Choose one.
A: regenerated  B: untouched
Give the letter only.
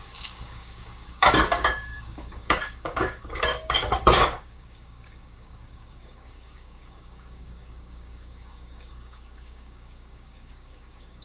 A